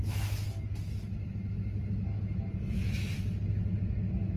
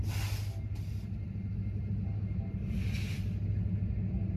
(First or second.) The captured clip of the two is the second